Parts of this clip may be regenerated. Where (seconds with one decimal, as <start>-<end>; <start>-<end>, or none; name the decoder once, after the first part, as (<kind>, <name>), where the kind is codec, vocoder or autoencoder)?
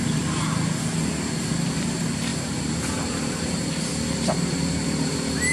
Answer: 2.3-3.9 (vocoder, BigVGAN v2)